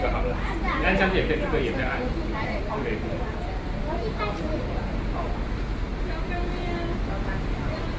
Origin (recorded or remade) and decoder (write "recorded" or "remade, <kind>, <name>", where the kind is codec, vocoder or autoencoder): recorded